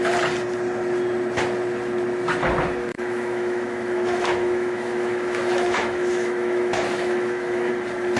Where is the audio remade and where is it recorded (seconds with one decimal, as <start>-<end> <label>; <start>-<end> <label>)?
0.0-2.9 recorded; 2.9-7.7 remade; 7.7-8.2 recorded